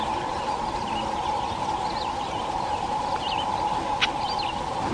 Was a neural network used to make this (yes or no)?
no